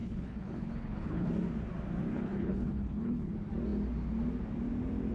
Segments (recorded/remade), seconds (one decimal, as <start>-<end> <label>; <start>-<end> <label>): 0.0-1.3 remade; 1.3-2.1 recorded; 2.1-3.3 remade; 3.3-5.1 recorded